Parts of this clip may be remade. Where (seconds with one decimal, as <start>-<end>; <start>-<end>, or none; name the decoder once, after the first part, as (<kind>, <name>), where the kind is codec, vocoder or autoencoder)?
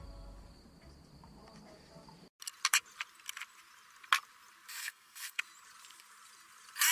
4.8-5.4 (codec, SNAC)